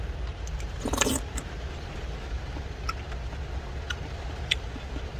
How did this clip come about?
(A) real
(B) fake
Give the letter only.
A